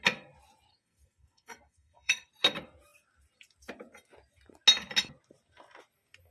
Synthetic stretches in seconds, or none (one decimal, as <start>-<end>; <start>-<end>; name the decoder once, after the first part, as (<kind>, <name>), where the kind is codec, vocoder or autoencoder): 0.7-2.3 (codec, SNAC)